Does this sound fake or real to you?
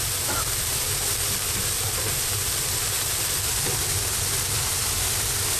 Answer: fake